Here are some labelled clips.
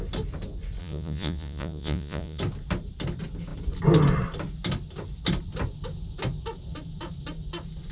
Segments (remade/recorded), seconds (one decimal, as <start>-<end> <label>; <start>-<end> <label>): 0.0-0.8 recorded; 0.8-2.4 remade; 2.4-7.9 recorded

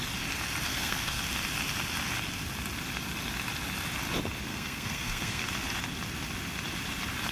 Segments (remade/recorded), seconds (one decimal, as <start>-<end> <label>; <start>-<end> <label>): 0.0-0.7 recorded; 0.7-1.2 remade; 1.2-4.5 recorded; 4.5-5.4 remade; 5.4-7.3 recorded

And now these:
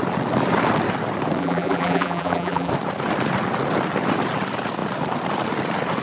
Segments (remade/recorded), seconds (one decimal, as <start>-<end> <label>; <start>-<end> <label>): 0.0-1.4 recorded; 1.4-2.7 remade; 2.7-6.0 recorded